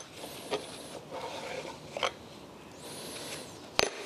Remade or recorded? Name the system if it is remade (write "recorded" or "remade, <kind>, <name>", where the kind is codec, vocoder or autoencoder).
recorded